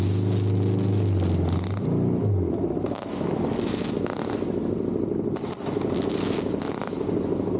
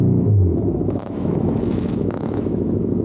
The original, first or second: first